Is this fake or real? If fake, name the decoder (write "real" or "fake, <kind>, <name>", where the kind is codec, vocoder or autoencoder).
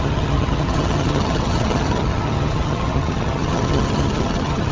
fake, vocoder, HiFi-GAN